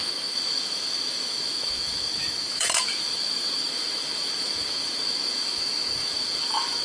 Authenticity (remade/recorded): remade